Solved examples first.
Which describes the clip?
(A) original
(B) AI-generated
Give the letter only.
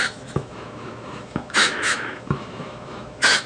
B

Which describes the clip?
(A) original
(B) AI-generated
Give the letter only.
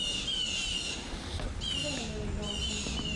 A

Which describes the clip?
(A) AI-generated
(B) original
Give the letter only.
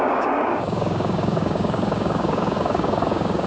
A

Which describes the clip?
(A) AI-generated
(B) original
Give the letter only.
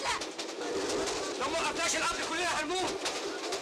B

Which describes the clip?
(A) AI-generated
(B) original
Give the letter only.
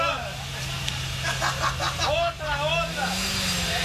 B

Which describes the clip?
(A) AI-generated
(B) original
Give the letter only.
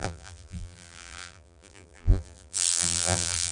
A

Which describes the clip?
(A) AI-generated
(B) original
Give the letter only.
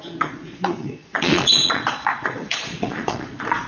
A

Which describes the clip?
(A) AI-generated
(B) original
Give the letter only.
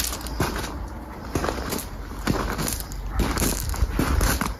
B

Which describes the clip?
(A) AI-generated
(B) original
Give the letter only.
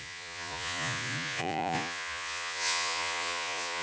A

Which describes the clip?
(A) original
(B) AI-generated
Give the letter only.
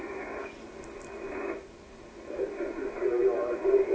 A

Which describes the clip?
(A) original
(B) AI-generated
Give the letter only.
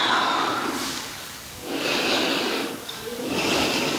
B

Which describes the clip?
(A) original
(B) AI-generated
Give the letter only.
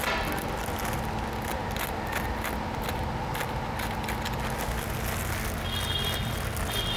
A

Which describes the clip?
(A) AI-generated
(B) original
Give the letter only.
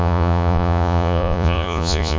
A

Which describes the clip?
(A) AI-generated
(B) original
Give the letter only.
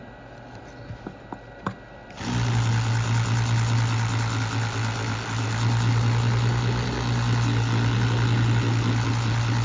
B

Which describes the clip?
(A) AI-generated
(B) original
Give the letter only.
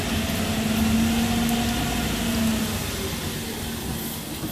B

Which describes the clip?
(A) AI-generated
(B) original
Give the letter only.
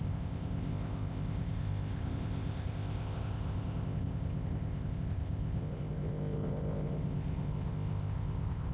A